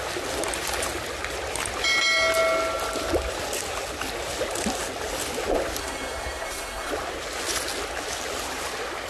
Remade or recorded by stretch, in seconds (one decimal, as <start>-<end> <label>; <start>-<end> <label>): 0.0-5.8 recorded; 5.8-6.9 remade; 6.9-9.1 recorded

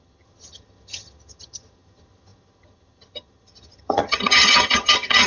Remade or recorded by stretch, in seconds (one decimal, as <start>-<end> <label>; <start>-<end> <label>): 0.0-5.3 remade

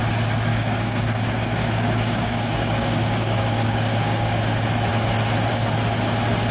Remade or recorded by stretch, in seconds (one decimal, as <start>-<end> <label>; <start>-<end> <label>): 0.0-0.5 recorded; 0.5-4.4 remade; 4.4-6.5 recorded

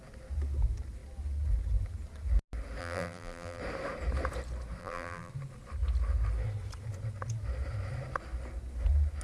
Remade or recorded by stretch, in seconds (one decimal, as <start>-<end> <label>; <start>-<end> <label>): 0.0-2.8 recorded; 2.8-3.6 remade; 3.6-4.8 recorded; 4.8-5.3 remade; 5.3-9.2 recorded